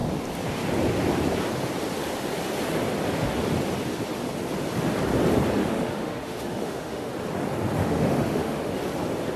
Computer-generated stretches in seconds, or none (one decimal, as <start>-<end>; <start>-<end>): 5.6-7.1; 7.8-8.7